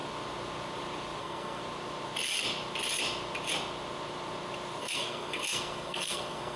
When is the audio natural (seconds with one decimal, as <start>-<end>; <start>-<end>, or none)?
0.0-1.2; 1.6-4.8